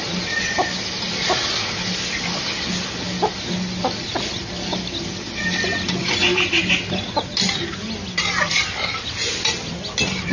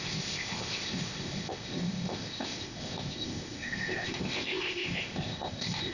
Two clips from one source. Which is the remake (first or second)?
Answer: second